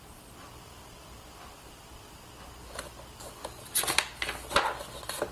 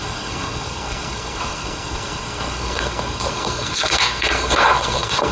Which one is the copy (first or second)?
second